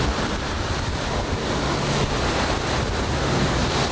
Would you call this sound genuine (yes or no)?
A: no